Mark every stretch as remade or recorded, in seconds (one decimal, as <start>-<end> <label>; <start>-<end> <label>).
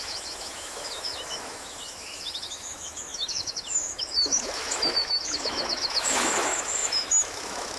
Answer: 0.0-7.8 remade